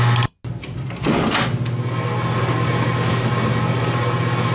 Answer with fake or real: real